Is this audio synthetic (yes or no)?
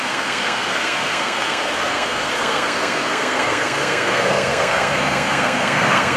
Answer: yes